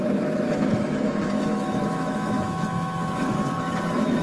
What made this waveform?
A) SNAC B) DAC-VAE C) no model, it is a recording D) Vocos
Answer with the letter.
B